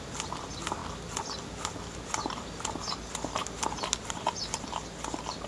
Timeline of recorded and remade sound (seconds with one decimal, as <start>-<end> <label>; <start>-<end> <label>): 0.0-5.5 recorded